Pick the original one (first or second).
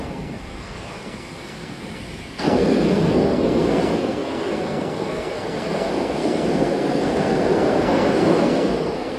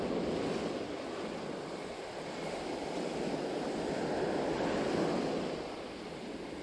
second